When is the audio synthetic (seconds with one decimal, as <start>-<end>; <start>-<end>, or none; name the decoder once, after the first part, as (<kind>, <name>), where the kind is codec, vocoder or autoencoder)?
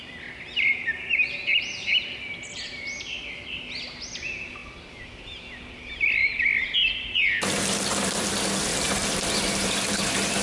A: none